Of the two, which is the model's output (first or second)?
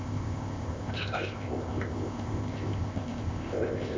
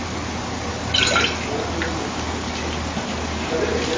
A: first